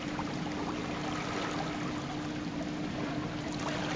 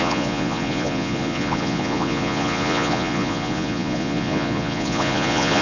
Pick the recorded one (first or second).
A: first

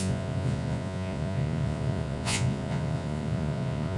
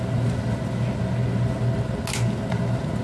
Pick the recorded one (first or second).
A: second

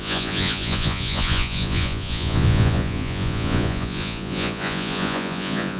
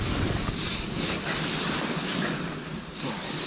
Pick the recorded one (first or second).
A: second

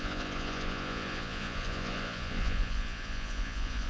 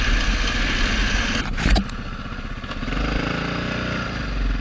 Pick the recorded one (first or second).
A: second